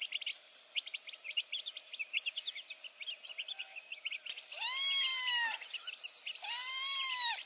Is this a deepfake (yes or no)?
no